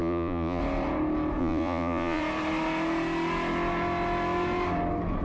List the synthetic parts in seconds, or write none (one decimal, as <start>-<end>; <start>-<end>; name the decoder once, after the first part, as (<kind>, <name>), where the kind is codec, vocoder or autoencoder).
0.0-0.6 (vocoder, Vocos); 1.4-2.2